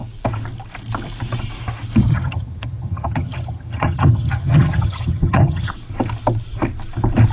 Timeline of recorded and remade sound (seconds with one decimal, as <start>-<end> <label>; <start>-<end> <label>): 0.0-2.1 recorded; 2.1-5.7 remade; 5.7-7.3 recorded